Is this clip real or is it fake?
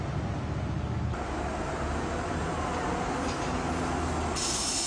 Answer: real